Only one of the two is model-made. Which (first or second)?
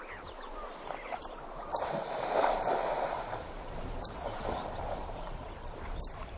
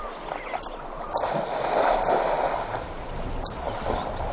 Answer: first